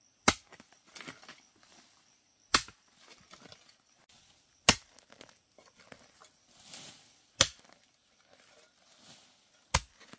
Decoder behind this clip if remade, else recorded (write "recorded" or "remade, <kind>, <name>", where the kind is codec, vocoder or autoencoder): recorded